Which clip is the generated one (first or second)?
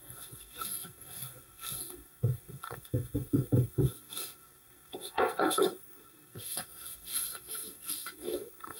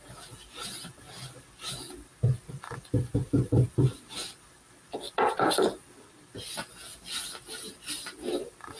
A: first